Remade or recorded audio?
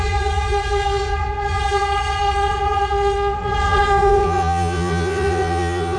remade